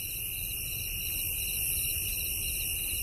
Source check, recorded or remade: recorded